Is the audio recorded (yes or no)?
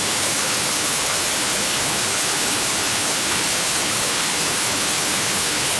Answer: no